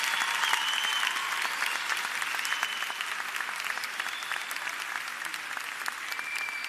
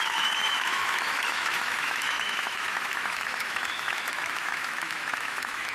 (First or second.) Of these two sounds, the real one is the first